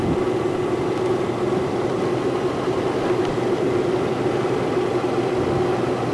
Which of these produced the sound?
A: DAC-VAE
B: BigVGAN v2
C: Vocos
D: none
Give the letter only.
D